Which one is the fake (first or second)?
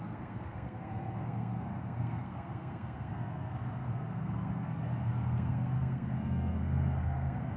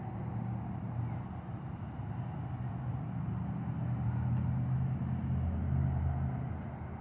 first